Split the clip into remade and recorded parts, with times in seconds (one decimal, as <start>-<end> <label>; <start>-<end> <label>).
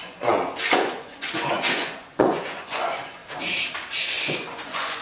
0.0-3.2 remade; 3.2-4.0 recorded; 4.0-5.0 remade